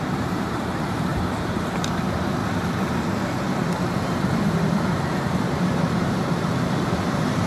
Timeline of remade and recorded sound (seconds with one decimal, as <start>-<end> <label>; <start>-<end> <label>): 0.0-2.4 remade; 2.4-3.8 recorded; 3.8-7.5 remade